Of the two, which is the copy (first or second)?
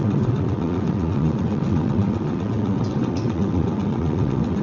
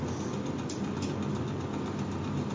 first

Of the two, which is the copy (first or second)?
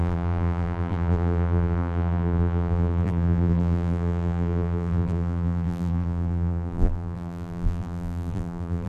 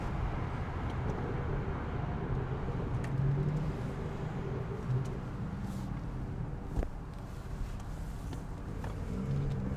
first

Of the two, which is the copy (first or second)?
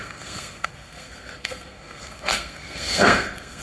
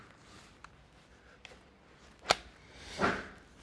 first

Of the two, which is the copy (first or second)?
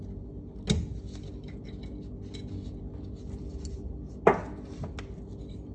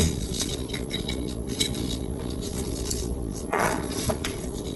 second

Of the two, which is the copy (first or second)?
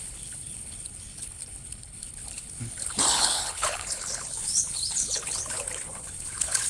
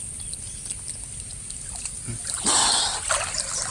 first